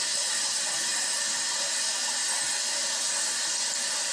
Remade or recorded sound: recorded